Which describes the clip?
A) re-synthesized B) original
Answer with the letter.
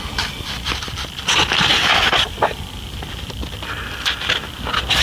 B